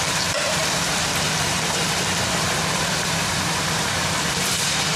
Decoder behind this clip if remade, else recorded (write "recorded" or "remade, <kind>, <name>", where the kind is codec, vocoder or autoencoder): remade, vocoder, BigVGAN v2